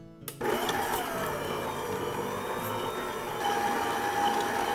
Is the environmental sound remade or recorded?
recorded